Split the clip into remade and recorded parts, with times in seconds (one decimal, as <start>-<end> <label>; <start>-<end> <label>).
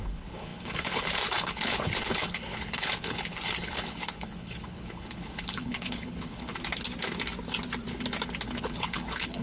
0.0-6.5 remade; 6.5-8.6 recorded; 8.6-9.4 remade